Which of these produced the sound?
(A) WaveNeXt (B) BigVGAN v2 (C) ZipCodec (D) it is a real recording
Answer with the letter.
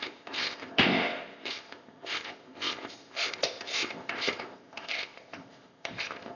C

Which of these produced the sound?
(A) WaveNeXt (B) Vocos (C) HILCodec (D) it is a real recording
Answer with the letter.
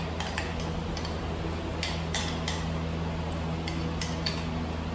D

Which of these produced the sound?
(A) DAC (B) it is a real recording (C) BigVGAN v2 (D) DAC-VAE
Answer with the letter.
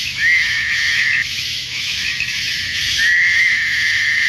D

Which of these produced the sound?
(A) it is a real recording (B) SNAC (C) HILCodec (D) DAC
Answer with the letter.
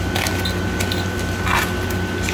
A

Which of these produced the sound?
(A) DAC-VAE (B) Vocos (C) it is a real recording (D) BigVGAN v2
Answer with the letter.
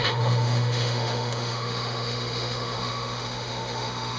A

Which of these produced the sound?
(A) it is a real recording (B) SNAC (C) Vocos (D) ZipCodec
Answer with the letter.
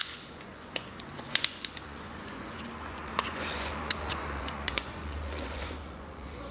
C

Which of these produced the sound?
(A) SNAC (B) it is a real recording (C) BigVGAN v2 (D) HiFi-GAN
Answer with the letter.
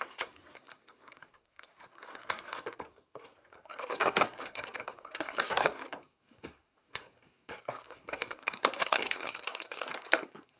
A